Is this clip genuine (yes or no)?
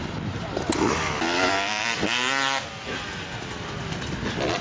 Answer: yes